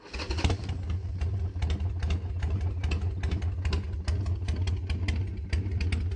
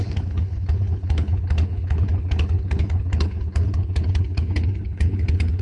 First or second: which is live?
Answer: first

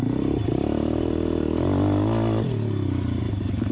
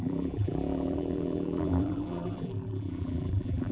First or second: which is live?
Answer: first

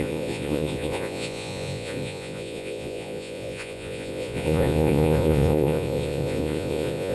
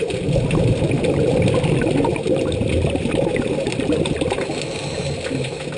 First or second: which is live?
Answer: second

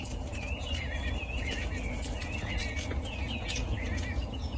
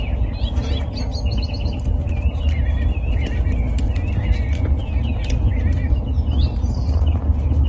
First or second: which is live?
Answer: second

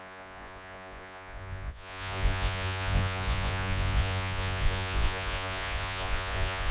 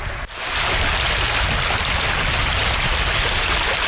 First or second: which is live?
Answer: second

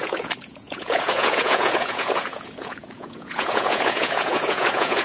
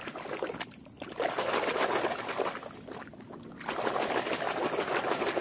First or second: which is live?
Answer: second